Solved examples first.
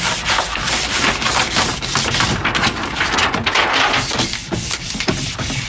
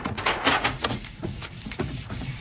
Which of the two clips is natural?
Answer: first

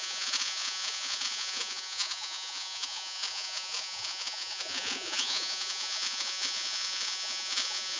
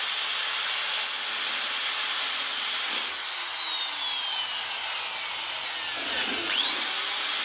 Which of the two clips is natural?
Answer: second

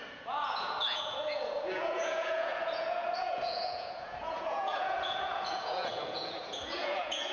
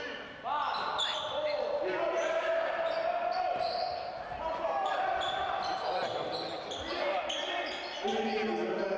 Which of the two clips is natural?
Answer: second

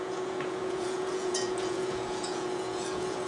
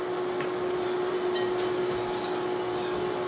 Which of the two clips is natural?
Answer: second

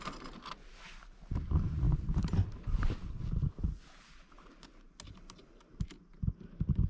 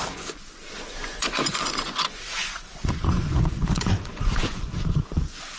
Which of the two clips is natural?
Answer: first